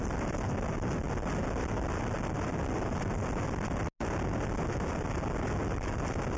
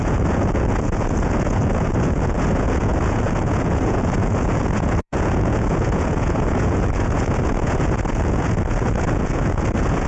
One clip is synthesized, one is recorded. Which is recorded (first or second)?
first